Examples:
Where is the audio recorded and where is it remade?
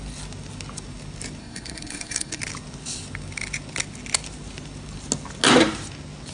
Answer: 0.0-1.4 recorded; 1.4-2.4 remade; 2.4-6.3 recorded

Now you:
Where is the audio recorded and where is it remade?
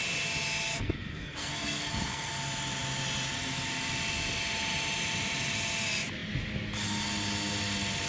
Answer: 0.0-0.7 recorded; 0.7-2.3 remade; 2.3-8.1 recorded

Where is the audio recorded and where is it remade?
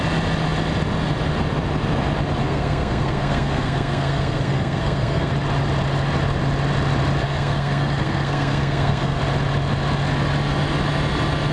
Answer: 0.0-2.4 recorded; 2.4-5.3 remade; 5.3-7.2 recorded; 7.2-9.2 remade; 9.2-11.5 recorded